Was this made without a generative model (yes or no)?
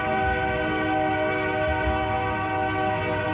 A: yes